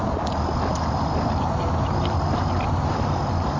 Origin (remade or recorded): recorded